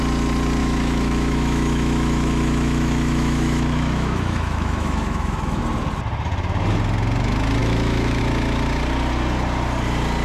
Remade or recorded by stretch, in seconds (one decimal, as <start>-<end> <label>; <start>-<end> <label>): 0.0-0.6 recorded; 0.6-5.6 remade; 5.6-7.6 recorded; 7.6-8.2 remade; 8.2-10.2 recorded